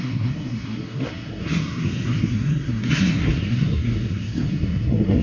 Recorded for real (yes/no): no